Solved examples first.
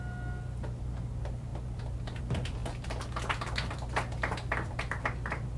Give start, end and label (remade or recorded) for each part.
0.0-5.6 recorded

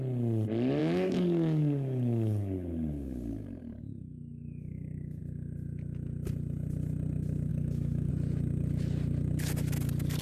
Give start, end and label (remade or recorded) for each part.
0.0-0.8 recorded; 0.8-5.2 remade; 5.2-7.5 recorded; 7.5-8.1 remade; 8.1-10.2 recorded

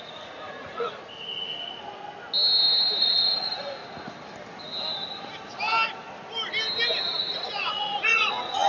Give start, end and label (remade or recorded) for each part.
0.0-1.0 remade; 1.0-3.0 recorded; 3.0-3.8 remade; 3.8-7.1 recorded; 7.1-8.7 remade

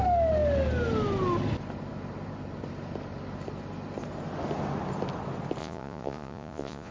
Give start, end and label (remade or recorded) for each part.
0.0-5.6 recorded; 5.6-6.9 remade

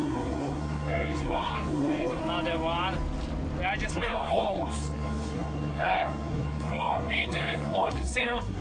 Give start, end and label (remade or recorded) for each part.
0.0-2.2 remade; 2.2-3.9 recorded; 3.9-8.6 remade